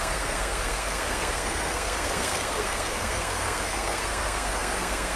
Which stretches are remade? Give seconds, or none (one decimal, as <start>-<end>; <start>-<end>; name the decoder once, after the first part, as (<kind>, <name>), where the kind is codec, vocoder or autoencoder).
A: 0.0-5.2 (codec, SNAC)